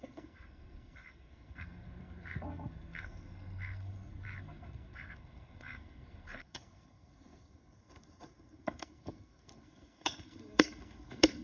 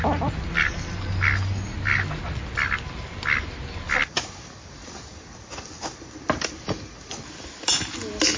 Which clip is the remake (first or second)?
first